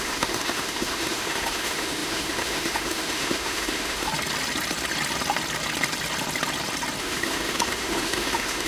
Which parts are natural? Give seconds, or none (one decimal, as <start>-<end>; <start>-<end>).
4.1-7.0

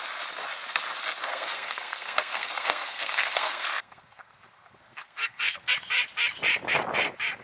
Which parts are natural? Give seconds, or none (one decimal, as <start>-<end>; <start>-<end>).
0.0-1.3; 5.7-7.4

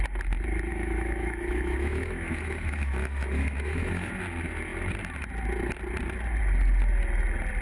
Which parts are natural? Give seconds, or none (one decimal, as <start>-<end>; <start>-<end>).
0.0-0.7; 4.1-7.6

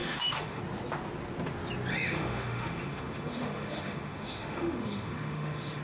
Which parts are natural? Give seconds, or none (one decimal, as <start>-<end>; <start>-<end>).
0.6-1.9